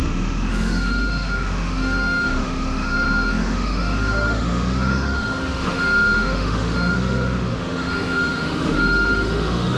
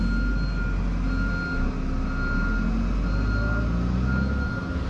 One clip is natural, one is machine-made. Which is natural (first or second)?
second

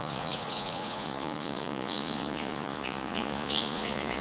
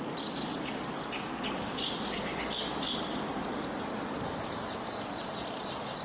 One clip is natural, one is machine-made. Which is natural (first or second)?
second